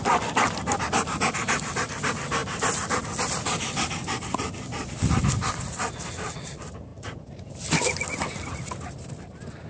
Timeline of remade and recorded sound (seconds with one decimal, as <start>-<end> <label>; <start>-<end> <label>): 0.0-9.7 recorded

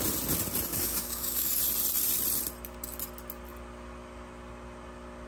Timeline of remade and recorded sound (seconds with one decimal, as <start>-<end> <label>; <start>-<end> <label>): 0.0-0.7 recorded; 0.7-1.6 remade; 1.6-5.3 recorded

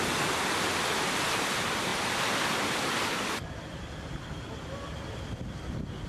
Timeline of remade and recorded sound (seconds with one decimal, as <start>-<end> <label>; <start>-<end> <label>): 0.0-1.9 recorded; 1.9-5.6 remade; 5.6-6.1 recorded

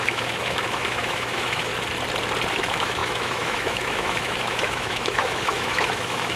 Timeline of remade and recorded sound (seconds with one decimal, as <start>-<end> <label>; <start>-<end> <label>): 0.0-1.7 remade; 1.7-2.5 recorded; 2.5-6.4 remade

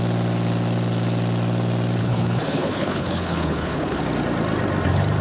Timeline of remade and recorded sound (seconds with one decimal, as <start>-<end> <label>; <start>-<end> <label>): 0.0-2.0 recorded; 2.0-4.0 remade; 4.0-5.2 recorded